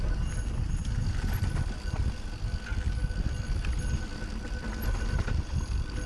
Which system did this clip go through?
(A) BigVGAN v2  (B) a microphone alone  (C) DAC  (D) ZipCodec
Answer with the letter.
B